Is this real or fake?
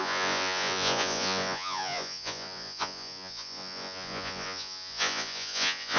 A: fake